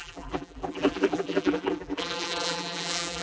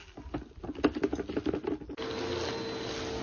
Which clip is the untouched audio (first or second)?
second